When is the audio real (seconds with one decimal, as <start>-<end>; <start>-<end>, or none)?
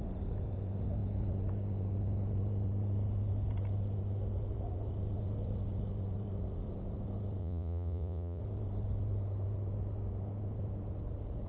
0.0-7.4; 8.4-11.5